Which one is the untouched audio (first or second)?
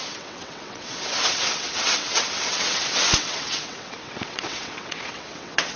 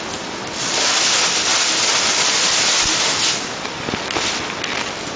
second